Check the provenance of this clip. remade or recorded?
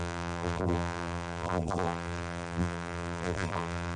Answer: remade